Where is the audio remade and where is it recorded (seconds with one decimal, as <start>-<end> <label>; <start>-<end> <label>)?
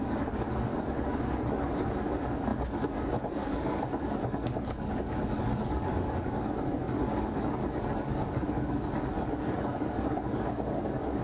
0.0-11.2 remade